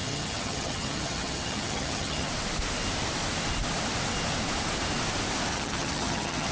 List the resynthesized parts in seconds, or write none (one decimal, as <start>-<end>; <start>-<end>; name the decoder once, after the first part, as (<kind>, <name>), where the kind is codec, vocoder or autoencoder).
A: 0.0-2.3 (vocoder, HiFi-GAN); 5.5-6.5